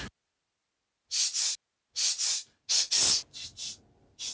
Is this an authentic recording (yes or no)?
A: yes